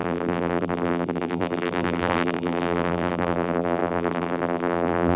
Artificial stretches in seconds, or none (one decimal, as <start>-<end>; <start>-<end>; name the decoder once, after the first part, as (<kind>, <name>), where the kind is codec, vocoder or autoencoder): 0.0-5.2 (vocoder, BigVGAN v2)